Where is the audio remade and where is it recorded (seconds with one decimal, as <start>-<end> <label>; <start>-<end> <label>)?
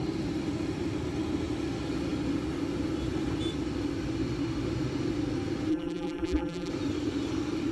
0.0-5.7 recorded; 5.7-6.7 remade; 6.7-7.7 recorded